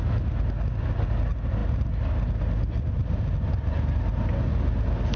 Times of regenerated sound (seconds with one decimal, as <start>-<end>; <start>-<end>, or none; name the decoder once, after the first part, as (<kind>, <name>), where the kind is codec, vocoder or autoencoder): none